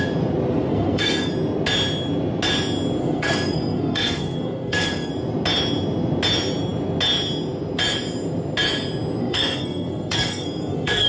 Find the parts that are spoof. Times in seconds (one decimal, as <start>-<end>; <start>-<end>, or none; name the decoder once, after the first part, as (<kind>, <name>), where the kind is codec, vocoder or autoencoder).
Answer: 0.7-1.3 (codec, SNAC); 3.0-5.1; 9.2-11.1